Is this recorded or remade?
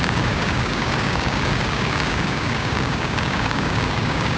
remade